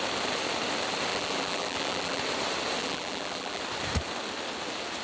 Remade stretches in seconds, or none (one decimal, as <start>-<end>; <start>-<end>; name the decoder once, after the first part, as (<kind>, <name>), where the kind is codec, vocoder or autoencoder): 1.1-2.2 (vocoder, BigVGAN v2); 2.8-3.6